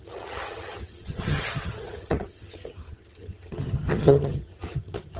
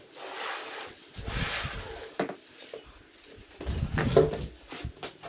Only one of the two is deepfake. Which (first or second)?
first